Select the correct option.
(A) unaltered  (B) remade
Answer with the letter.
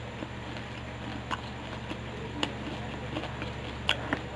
A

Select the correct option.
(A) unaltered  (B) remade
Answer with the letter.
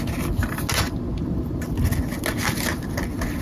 A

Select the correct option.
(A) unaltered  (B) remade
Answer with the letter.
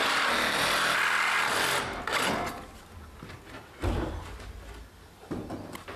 A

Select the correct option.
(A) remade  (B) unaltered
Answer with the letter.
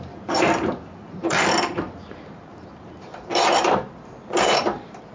A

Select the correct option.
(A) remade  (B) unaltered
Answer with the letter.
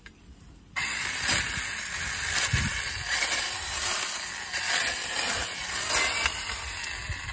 B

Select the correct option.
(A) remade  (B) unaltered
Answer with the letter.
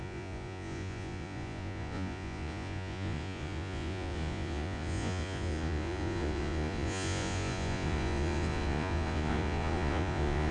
A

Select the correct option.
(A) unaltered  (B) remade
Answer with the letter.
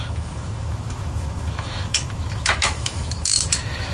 B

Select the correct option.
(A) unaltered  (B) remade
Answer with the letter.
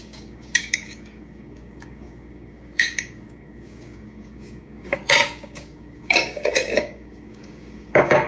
B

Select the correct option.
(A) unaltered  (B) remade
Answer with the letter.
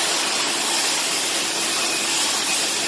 A